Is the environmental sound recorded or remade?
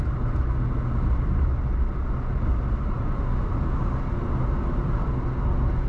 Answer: recorded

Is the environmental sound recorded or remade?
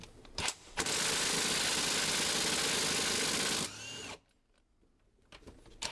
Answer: recorded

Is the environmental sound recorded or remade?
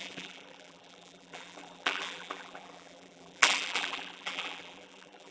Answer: remade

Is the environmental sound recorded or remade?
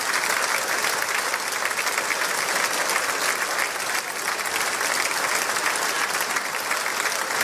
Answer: recorded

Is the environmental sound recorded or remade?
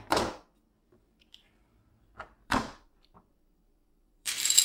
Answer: remade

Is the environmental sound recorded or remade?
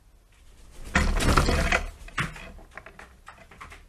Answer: recorded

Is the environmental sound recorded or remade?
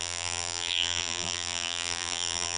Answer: remade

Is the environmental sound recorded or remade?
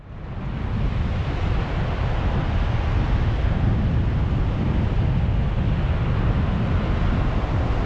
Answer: recorded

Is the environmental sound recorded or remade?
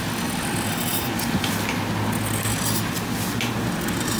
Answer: recorded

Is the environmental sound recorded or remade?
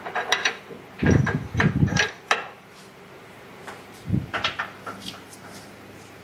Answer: remade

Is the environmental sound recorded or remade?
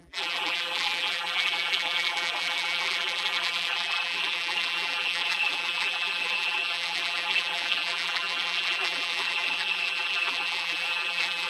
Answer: remade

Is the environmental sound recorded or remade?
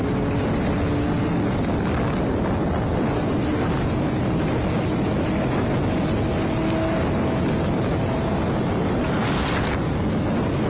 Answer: recorded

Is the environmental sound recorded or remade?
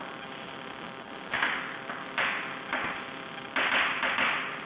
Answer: recorded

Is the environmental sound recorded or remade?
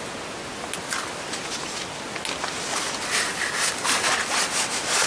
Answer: recorded